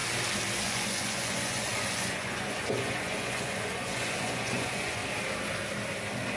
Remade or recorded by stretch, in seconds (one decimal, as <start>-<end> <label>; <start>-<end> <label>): 0.0-0.6 recorded; 0.6-5.0 remade; 5.0-6.4 recorded